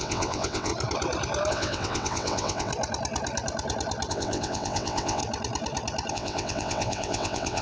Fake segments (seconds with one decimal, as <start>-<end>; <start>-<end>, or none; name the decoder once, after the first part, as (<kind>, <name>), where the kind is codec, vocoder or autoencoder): 0.0-0.7 (vocoder, WaveNeXt); 1.5-2.7; 4.1-5.2; 6.1-7.6